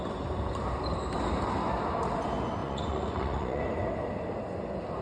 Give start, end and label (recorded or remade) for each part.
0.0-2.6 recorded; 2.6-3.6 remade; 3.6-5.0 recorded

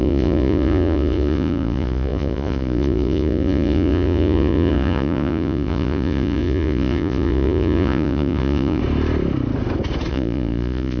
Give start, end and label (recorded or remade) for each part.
0.0-8.8 remade; 8.8-10.1 recorded; 10.1-11.0 remade